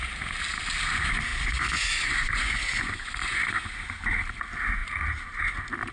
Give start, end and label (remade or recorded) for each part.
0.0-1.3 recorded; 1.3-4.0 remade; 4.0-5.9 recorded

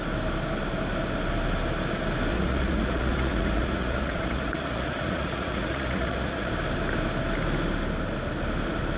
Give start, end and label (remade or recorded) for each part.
0.0-2.3 recorded; 2.3-6.5 remade; 6.5-9.0 recorded

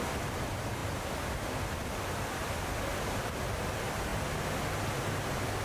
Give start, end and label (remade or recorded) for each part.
0.0-5.6 recorded

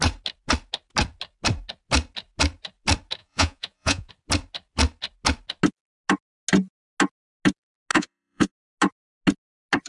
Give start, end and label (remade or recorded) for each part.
0.0-3.2 recorded; 3.2-4.1 remade; 4.1-7.9 recorded; 7.9-8.5 remade; 8.5-9.9 recorded

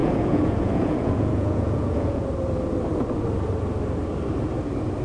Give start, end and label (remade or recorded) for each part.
0.0-2.2 remade; 2.2-5.0 recorded